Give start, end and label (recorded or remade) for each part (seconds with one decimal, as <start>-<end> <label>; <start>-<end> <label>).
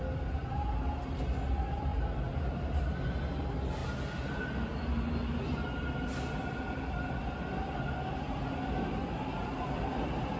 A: 0.0-1.9 recorded; 1.9-2.8 remade; 2.8-10.4 recorded